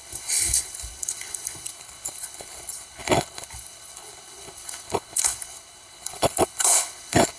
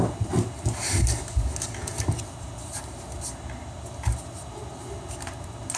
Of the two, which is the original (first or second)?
second